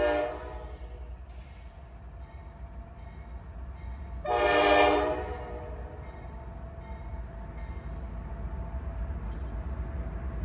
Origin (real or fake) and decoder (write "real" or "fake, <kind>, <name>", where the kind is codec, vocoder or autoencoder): real